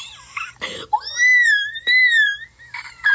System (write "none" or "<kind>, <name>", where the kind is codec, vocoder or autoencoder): vocoder, BigVGAN v2